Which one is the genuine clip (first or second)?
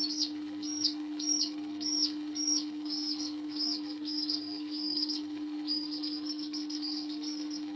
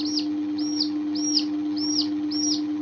second